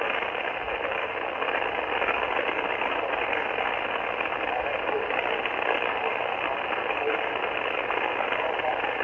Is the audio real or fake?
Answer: real